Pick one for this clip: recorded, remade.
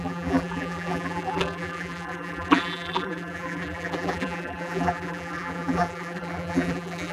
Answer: remade